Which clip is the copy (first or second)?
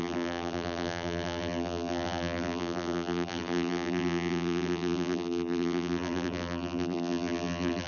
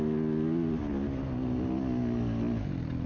first